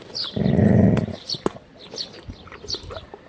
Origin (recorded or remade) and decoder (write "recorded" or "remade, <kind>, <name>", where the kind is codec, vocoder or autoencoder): recorded